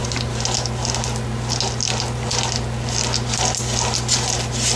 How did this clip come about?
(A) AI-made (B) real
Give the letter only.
B